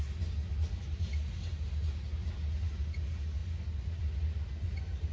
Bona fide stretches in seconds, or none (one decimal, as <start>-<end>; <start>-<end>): 0.0-5.1